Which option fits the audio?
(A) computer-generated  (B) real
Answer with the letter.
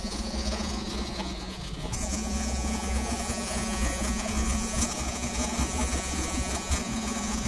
A